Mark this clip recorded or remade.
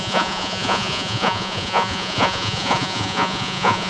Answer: remade